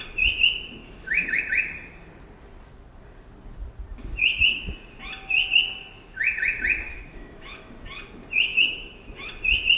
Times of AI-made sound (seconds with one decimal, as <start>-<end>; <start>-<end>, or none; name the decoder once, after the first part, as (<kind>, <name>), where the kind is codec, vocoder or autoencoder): 0.8-1.4 (autoencoder, DAC-VAE); 6.9-7.7; 8.5-9.3